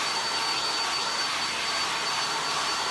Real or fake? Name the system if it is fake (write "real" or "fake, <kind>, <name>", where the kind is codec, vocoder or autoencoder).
real